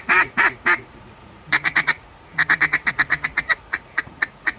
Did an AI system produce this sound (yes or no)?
yes